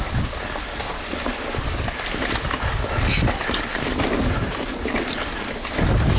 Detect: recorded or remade recorded